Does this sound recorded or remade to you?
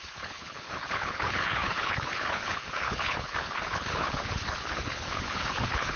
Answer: remade